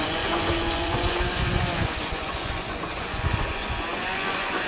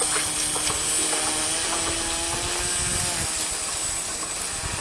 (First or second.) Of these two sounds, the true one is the second